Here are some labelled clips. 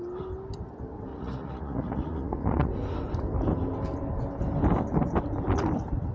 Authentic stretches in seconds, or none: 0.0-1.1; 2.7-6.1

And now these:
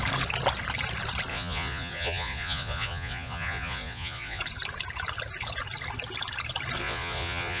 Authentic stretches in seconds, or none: 0.0-1.3; 4.4-6.8

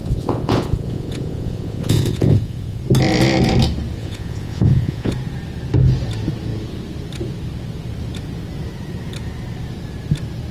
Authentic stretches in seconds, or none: 2.8-4.0; 5.1-10.5

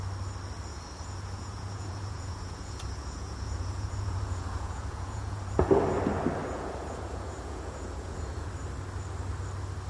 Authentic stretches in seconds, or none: 0.0-0.7; 5.8-6.4; 8.5-9.9

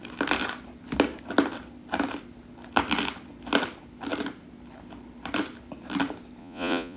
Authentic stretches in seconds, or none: 0.0-6.4

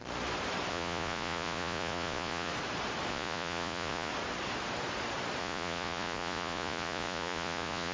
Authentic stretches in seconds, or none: 0.0-0.7; 2.5-3.1; 4.1-5.4

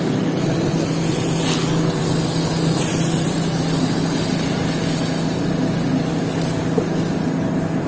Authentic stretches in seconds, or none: 0.0-7.9

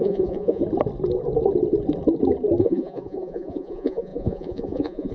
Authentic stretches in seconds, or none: 0.6-2.6